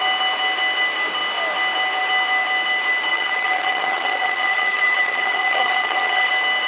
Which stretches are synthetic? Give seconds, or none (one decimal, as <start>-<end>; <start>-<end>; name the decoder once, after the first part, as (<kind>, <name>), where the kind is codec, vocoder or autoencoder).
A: 3.1-6.3 (vocoder, HiFi-GAN)